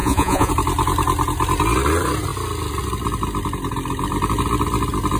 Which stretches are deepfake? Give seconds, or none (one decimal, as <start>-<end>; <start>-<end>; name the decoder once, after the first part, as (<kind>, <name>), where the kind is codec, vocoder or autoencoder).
0.0-0.5 (vocoder, Vocos)